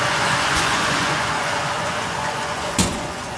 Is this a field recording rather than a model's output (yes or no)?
no